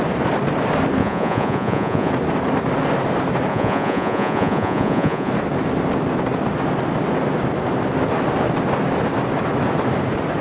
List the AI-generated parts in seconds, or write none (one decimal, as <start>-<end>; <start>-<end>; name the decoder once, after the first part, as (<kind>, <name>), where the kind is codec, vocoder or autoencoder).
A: 1.0-2.1 (vocoder, Vocos); 3.5-5.3